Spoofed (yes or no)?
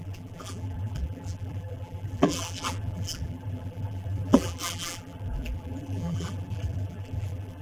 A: yes